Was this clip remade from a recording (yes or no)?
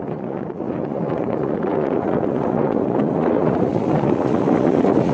yes